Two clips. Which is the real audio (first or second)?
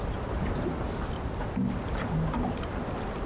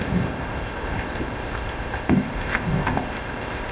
first